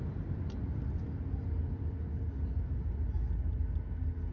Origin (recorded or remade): recorded